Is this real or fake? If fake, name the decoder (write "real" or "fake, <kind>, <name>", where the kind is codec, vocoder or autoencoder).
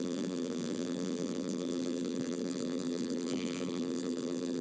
fake, vocoder, BigVGAN v2